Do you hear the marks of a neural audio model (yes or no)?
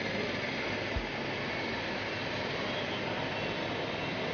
no